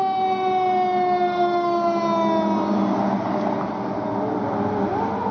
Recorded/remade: recorded